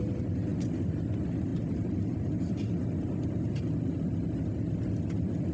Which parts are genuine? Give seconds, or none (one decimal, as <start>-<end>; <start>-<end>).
0.0-1.5; 2.5-5.5